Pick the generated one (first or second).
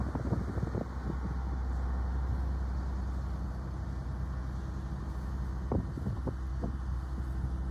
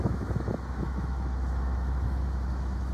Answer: second